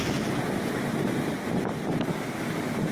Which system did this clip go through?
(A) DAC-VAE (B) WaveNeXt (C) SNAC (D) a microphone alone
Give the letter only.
D